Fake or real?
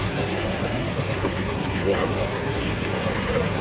fake